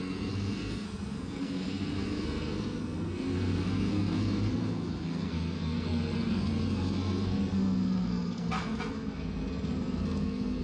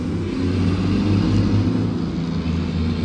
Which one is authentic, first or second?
second